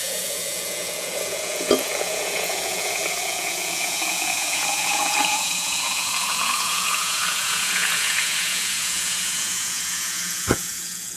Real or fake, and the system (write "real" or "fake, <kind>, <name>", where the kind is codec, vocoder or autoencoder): fake, vocoder, Vocos